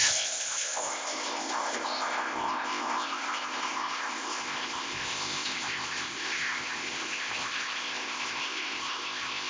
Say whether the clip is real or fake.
fake